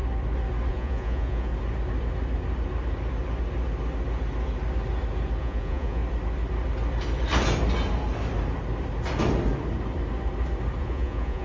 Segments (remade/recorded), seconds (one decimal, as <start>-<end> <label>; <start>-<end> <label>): 0.0-0.7 recorded; 0.7-1.5 remade; 1.5-5.4 recorded; 5.4-6.0 remade; 6.0-10.8 recorded; 10.8-11.4 remade

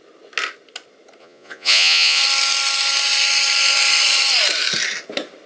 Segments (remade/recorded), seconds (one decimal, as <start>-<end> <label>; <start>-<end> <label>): 0.0-1.2 recorded; 1.2-2.2 remade; 2.2-5.5 recorded

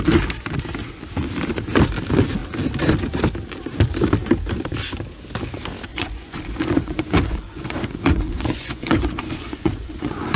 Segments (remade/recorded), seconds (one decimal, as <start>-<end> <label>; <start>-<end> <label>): 0.0-5.9 recorded; 5.9-10.4 remade

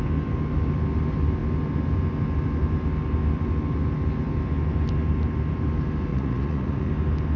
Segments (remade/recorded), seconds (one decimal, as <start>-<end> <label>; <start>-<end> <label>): 0.0-6.1 recorded; 6.1-6.9 remade; 6.9-7.4 recorded

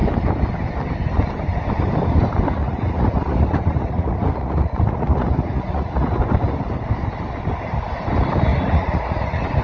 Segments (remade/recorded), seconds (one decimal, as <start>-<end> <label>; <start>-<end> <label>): 0.0-2.6 recorded; 2.6-6.2 remade; 6.2-8.5 recorded; 8.5-9.6 remade

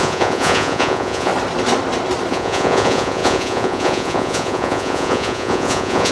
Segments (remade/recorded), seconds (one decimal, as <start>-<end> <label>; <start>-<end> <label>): 0.0-1.3 remade; 1.3-2.3 recorded; 2.3-6.1 remade

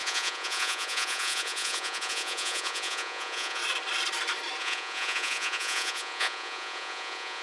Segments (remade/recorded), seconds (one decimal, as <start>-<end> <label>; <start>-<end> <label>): 0.0-3.6 remade; 3.6-4.6 recorded; 4.6-7.4 remade